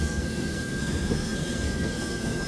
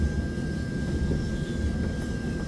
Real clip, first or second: second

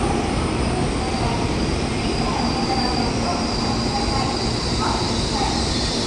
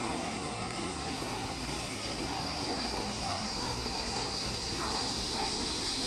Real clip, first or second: first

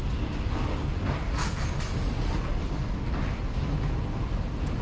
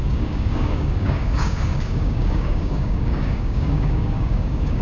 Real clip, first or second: first